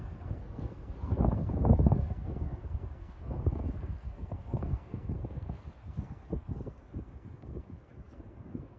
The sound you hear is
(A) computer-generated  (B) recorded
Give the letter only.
A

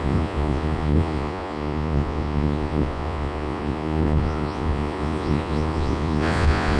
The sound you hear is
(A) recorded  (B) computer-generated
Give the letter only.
B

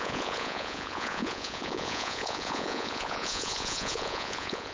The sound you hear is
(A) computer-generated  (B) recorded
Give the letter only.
A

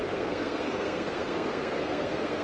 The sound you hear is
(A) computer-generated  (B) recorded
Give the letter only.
A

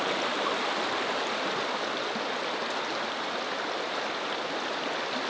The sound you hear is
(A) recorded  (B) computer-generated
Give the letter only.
A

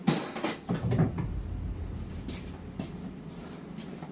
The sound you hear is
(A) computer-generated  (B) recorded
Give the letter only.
B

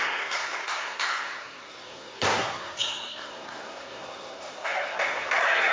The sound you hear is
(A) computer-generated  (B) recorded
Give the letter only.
A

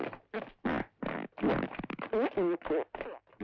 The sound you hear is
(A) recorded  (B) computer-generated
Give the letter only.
A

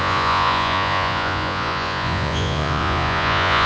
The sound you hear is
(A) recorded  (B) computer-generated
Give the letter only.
B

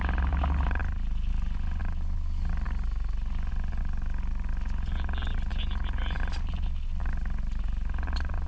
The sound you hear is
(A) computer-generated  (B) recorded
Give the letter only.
B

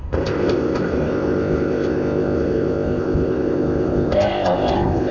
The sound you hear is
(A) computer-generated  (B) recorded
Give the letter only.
A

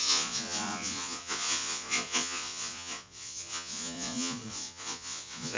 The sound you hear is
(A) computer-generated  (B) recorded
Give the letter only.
A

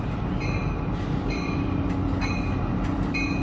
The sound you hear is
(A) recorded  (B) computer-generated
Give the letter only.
A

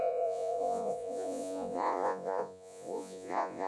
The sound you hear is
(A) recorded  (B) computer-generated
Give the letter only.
B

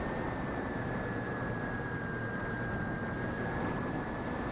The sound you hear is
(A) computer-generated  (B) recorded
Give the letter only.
A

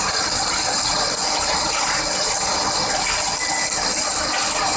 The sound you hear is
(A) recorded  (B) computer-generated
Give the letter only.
A